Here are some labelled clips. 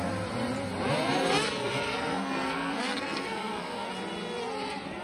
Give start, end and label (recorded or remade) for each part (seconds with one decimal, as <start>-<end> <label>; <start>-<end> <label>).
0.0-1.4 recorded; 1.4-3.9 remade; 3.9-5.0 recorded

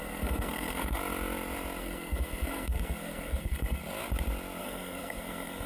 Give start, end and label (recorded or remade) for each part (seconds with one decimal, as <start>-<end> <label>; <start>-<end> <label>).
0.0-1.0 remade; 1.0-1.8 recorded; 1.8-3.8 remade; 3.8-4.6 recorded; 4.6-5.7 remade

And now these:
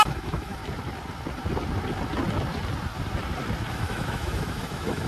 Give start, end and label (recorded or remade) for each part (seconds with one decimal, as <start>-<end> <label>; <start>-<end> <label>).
0.0-0.6 remade; 0.6-3.7 recorded; 3.7-5.1 remade

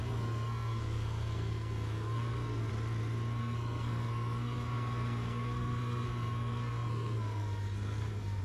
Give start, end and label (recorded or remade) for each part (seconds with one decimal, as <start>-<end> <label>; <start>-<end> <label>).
0.0-2.7 remade; 2.7-3.4 recorded; 3.4-8.4 remade